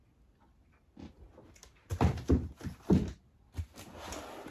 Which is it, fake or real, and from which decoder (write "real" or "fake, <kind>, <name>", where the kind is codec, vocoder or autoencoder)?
real